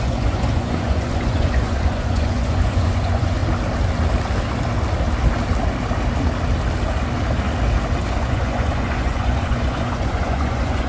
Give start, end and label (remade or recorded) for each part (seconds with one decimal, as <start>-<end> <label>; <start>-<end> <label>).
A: 0.0-3.4 remade; 3.4-8.1 recorded; 8.1-10.9 remade